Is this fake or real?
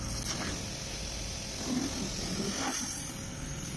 real